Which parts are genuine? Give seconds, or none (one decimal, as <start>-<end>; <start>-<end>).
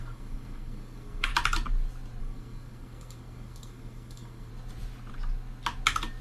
1.3-2.2; 4.5-6.2